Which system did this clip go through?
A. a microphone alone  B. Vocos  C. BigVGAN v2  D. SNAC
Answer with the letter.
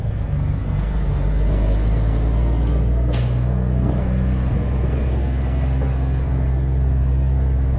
D